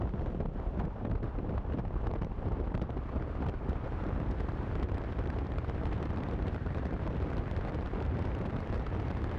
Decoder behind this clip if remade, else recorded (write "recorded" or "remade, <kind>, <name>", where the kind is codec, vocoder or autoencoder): remade, vocoder, BigVGAN v2